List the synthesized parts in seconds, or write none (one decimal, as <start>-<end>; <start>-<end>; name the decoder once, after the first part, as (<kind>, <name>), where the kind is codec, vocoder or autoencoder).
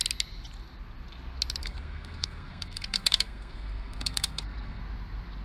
1.6-4.8 (codec, SNAC)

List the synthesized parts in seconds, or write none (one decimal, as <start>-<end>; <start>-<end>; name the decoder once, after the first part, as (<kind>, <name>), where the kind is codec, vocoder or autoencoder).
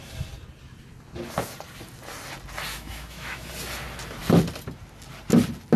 2.7-3.5 (autoencoder, DAC-VAE)